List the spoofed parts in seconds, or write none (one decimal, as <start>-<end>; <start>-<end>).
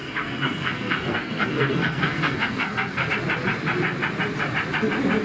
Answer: 0.0-3.1